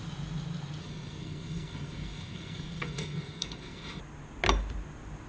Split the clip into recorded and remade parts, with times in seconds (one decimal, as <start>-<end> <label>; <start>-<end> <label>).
0.0-0.8 recorded; 0.8-4.0 remade; 4.0-5.3 recorded